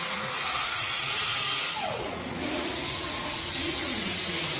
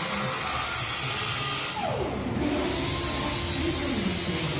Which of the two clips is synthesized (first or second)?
first